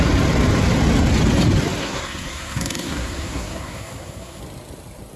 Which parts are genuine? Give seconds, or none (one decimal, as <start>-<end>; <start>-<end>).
0.0-1.8; 4.4-5.2